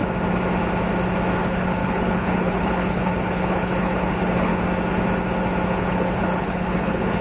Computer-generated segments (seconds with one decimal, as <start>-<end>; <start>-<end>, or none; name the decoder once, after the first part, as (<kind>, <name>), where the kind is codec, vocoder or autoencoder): 1.4-4.5 (codec, HILCodec); 5.8-7.2

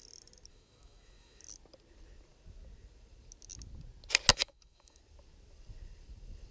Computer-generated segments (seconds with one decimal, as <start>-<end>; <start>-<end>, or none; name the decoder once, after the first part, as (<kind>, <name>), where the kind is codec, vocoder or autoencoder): 0.5-1.4 (autoencoder, DAC-VAE); 4.3-5.0

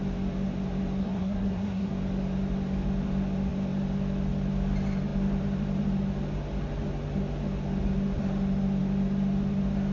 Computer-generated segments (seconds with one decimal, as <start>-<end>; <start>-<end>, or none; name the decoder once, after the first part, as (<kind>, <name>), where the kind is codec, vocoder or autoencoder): 1.0-1.9 (codec, SNAC)

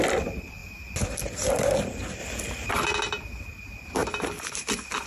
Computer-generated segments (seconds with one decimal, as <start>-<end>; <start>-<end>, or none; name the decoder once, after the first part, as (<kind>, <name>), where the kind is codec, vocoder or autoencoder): none

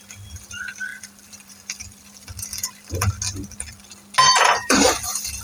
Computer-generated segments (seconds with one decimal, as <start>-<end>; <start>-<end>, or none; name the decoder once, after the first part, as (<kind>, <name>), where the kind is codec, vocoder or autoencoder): 0.9-3.1 (vocoder, BigVGAN v2); 4.6-5.4

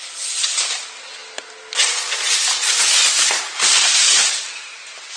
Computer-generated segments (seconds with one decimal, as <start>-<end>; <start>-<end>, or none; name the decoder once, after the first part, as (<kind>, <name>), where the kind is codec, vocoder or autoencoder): none

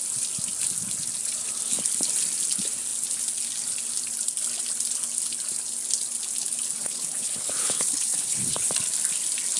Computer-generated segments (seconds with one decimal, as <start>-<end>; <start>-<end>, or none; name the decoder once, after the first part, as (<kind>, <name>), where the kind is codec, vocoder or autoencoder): 6.8-8.7 (codec, HILCodec)